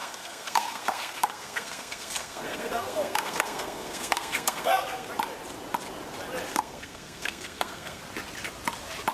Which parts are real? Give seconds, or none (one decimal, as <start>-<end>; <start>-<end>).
5.1-6.5; 8.0-9.1